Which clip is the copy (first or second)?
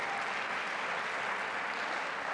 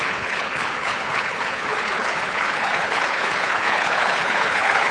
second